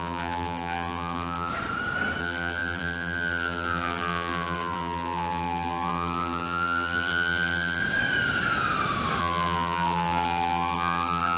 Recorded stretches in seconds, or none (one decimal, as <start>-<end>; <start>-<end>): 1.5-2.2; 7.8-9.2